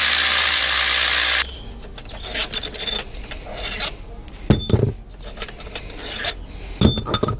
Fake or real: real